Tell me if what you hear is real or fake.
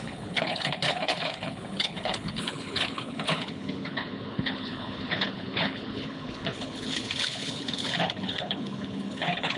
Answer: fake